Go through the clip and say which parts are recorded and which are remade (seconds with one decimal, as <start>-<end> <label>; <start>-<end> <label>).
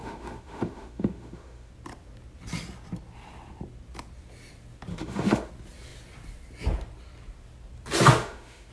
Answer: 0.0-1.7 remade; 1.7-4.9 recorded; 4.9-5.5 remade; 5.5-8.2 recorded; 8.2-8.7 remade